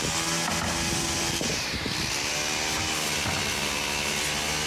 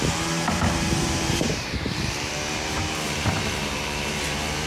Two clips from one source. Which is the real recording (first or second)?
first